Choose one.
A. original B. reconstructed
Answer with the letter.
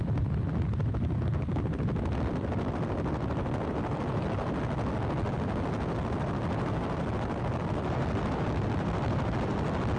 A